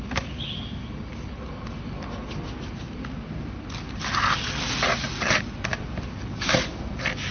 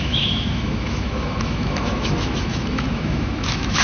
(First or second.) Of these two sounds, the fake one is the second